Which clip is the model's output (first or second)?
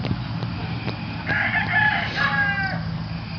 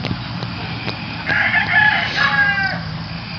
second